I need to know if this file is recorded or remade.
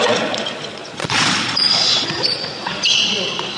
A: remade